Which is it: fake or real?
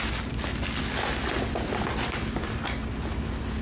real